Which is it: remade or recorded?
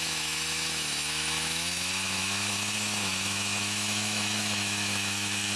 remade